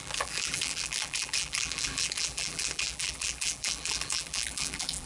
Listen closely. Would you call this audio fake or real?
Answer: fake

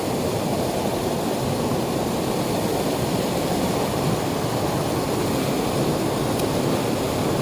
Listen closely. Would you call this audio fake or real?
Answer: real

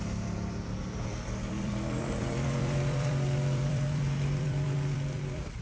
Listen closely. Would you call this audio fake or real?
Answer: fake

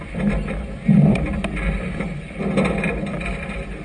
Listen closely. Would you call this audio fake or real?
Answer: fake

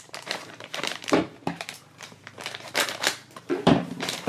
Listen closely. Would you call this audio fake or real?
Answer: fake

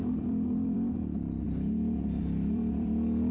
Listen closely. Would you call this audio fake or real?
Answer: fake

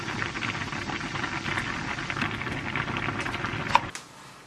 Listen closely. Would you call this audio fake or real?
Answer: real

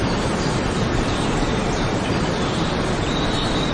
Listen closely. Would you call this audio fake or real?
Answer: fake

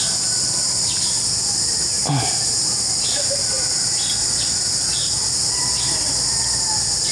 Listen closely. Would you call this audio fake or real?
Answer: real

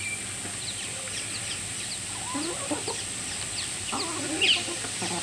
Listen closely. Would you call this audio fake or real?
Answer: real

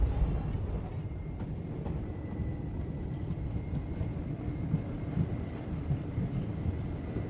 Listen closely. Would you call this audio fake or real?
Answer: real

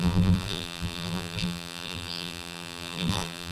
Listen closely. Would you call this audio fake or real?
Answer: fake